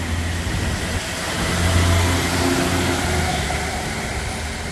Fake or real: real